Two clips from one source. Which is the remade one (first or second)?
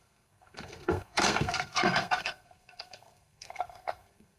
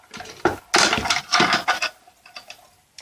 first